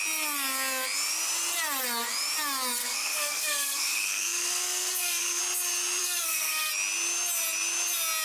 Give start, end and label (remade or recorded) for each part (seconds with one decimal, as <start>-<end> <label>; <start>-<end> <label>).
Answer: 0.0-2.8 recorded; 2.8-5.4 remade; 5.4-6.0 recorded; 6.0-6.7 remade; 6.7-8.2 recorded